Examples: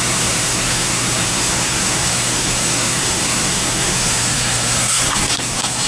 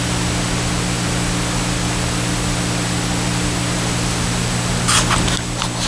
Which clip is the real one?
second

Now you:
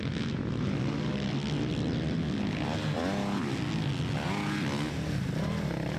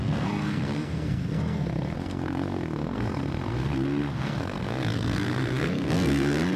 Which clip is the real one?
first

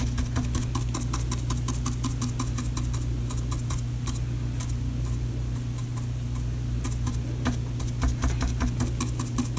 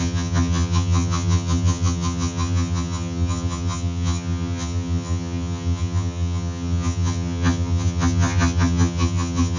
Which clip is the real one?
first